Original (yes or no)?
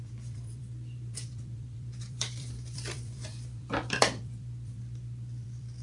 no